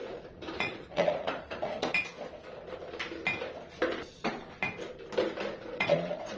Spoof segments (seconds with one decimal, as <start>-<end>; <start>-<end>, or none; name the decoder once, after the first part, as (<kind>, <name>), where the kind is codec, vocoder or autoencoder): 0.0-1.9 (vocoder, Vocos); 5.6-6.4